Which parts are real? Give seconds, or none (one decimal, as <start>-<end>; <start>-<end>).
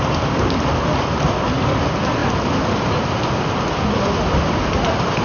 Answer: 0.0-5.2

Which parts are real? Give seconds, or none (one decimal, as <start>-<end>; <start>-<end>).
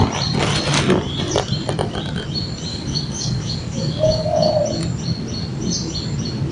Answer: 0.0-2.7; 4.5-6.5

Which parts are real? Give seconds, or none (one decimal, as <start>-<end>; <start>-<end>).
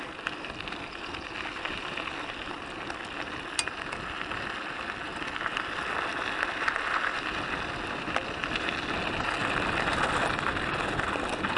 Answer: 0.0-11.6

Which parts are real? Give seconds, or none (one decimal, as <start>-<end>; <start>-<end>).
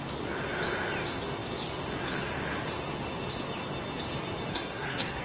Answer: 0.0-4.5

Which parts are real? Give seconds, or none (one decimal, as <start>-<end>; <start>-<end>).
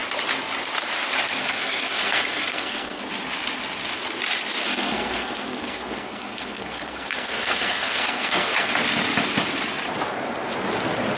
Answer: 0.0-1.4; 3.0-4.6; 8.7-11.2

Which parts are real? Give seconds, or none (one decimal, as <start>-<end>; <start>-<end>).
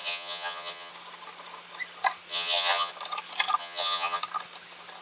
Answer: 0.9-2.3; 2.9-3.6; 4.2-5.0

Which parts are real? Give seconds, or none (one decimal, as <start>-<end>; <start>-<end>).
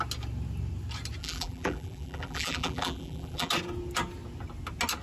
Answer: 0.0-1.2; 3.5-5.0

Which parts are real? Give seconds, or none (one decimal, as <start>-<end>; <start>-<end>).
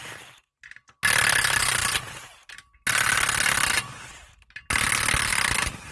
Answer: 0.0-5.9